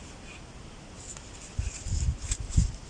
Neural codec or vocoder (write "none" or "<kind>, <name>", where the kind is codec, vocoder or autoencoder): none